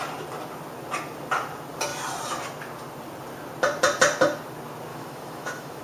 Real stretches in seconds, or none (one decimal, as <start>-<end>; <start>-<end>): 0.0-4.9